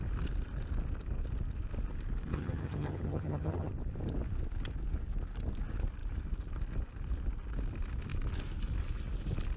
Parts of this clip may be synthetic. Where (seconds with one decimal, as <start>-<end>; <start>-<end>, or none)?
2.3-3.7

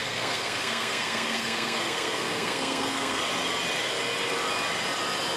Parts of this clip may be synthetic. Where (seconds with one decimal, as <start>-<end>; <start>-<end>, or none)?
0.0-3.2

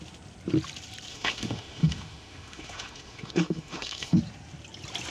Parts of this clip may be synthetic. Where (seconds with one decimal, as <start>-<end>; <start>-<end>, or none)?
1.1-4.2

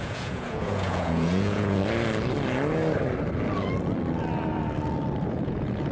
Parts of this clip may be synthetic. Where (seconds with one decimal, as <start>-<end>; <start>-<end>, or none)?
0.0-1.8; 5.3-5.9

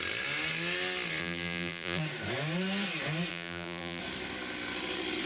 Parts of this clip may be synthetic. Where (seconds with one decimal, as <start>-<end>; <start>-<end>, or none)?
1.2-2.0; 3.3-4.0